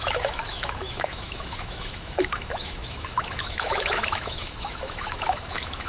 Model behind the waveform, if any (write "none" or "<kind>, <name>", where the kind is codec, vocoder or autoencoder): autoencoder, DAC-VAE